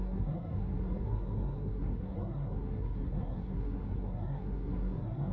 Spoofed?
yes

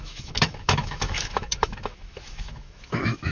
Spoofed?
yes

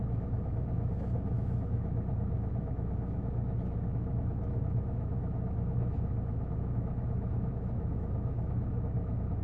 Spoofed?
yes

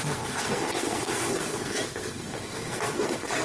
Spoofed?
yes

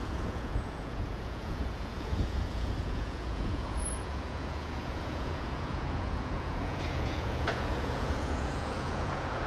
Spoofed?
yes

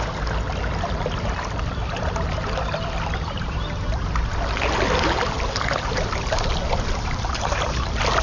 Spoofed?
no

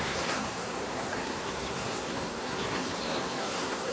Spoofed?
yes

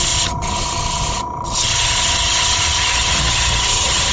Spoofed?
yes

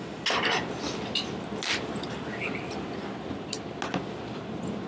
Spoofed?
no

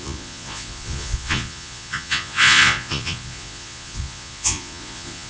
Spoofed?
yes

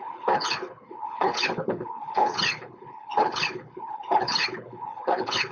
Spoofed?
yes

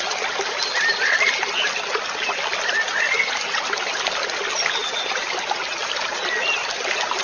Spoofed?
no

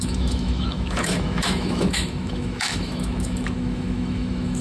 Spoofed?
yes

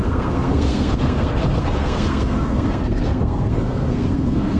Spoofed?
yes